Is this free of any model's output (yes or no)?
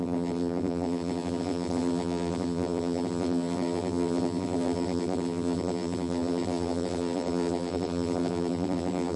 no